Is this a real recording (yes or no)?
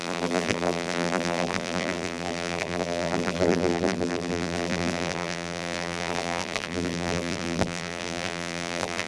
no